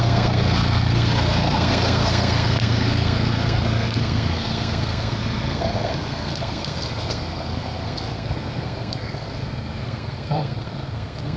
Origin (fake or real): fake